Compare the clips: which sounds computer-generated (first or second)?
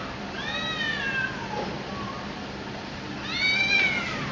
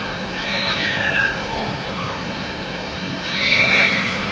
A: second